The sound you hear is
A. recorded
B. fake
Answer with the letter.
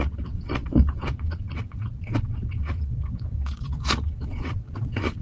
B